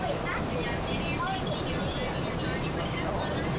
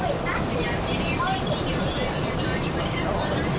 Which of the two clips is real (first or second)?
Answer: first